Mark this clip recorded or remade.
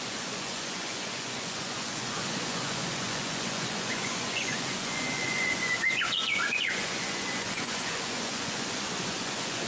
remade